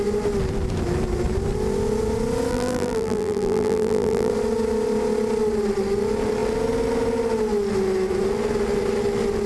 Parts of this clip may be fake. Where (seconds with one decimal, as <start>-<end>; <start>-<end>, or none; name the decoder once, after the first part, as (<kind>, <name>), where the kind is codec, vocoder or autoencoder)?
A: 2.5-4.3 (vocoder, BigVGAN v2)